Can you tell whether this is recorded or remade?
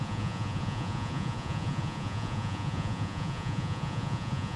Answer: remade